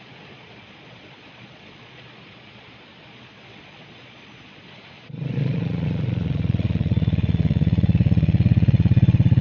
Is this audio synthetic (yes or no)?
yes